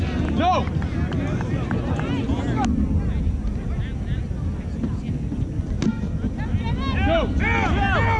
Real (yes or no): yes